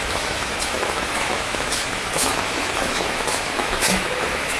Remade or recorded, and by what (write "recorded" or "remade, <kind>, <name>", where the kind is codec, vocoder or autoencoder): remade, autoencoder, DAC-VAE